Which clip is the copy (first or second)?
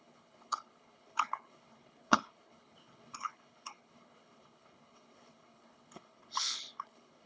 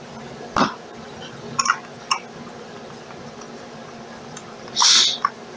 first